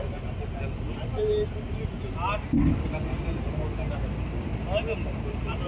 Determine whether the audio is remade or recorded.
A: recorded